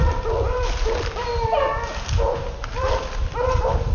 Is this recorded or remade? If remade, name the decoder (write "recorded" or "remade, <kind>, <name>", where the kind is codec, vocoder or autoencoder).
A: recorded